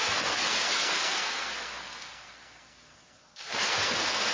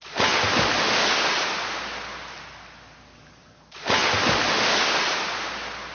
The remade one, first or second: first